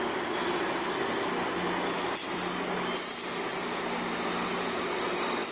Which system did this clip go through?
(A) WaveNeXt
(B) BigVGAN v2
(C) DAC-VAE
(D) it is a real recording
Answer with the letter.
D